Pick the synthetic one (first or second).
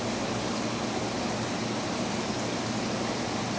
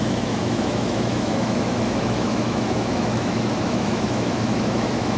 second